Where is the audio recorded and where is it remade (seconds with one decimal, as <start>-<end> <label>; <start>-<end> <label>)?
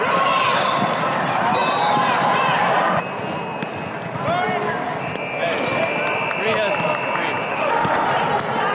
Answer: 0.0-7.5 recorded; 7.5-8.1 remade; 8.1-8.7 recorded